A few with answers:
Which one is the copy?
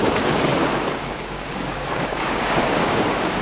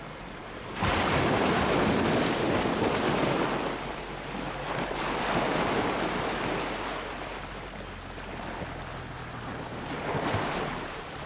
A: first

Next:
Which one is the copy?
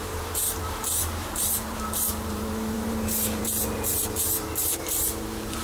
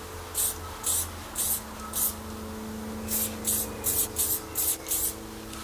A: first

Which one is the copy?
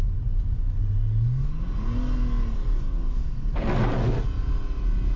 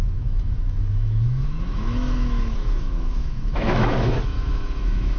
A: second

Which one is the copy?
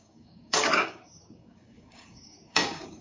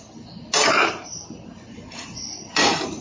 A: first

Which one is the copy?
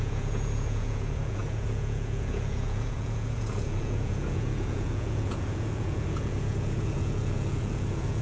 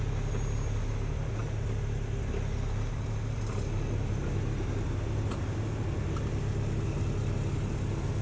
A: first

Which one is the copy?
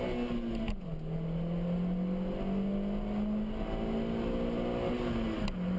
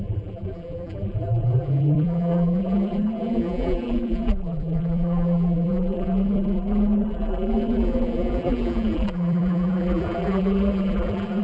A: second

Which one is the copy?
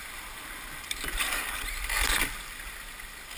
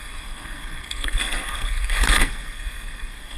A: second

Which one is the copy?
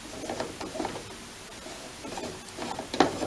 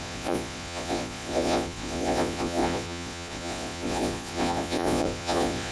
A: second